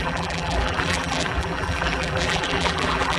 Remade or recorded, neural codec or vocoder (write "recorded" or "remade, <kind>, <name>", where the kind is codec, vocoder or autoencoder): remade, vocoder, BigVGAN v2